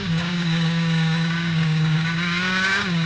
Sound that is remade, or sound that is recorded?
remade